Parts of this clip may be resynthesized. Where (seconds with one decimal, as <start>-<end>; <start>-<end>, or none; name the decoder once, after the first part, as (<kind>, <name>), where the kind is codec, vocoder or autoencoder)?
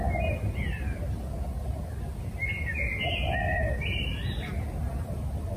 none